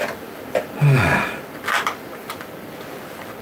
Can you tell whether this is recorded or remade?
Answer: recorded